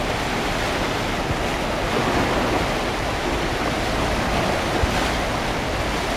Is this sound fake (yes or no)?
no